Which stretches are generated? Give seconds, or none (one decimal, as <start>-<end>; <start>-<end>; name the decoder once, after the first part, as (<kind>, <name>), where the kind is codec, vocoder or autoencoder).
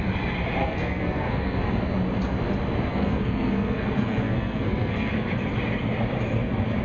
0.6-1.6 (codec, SNAC); 2.9-5.1